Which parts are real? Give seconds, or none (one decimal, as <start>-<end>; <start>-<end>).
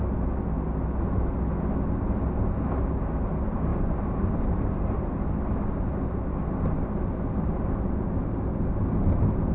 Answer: 0.0-3.7; 5.0-9.5